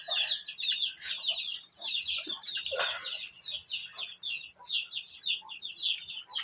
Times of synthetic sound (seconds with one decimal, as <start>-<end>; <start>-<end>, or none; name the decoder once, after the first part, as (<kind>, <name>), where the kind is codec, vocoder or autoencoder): 1.5-2.8 (vocoder, BigVGAN v2)